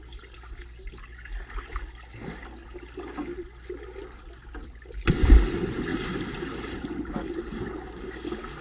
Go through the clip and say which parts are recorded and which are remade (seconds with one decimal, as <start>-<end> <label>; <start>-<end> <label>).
0.0-8.6 recorded